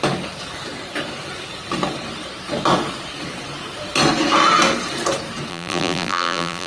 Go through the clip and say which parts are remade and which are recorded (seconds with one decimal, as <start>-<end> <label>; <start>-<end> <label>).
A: 0.0-5.5 recorded; 5.5-6.7 remade